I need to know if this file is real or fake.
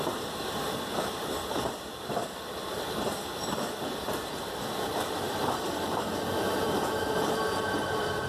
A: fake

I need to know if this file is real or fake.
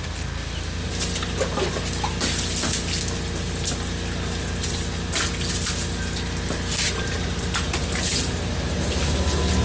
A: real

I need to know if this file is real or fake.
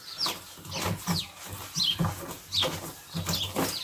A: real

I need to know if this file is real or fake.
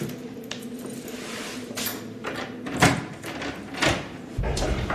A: real